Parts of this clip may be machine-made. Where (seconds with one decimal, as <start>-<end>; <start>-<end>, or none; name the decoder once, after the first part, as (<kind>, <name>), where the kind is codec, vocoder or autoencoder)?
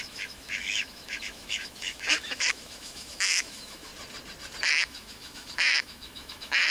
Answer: 0.0-3.9 (autoencoder, DAC-VAE); 4.7-6.7